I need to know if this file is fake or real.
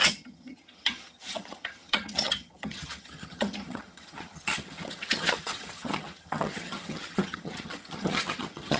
fake